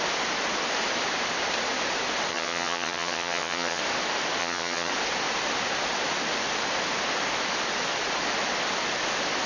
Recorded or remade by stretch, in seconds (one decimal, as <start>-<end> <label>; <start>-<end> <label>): 0.0-2.3 recorded; 2.3-3.8 remade; 3.8-4.4 recorded; 4.4-4.9 remade; 4.9-9.5 recorded